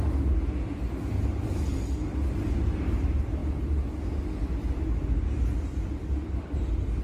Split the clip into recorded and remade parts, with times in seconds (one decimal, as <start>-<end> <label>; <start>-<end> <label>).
0.0-7.0 recorded